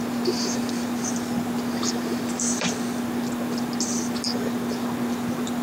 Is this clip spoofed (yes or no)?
no